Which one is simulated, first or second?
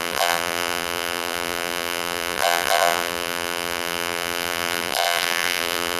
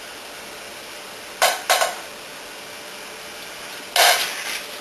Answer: first